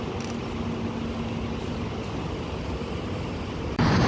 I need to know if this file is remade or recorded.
recorded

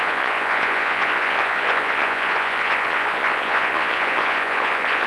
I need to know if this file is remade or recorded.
remade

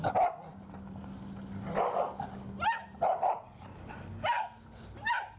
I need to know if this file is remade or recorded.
recorded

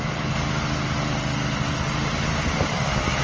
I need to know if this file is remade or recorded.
recorded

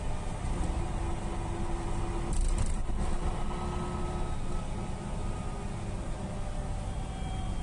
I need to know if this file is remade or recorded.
recorded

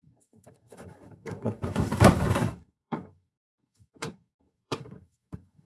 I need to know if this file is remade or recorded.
remade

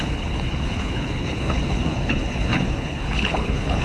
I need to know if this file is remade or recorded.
remade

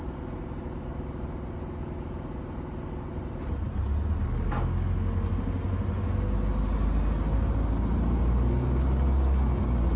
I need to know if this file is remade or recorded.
recorded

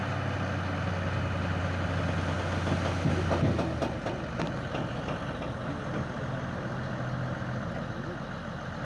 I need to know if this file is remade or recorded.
recorded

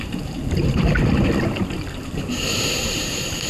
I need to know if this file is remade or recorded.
recorded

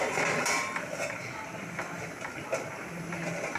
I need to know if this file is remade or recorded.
recorded